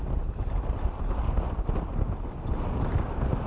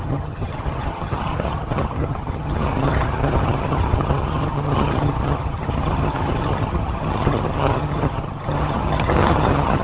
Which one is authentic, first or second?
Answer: first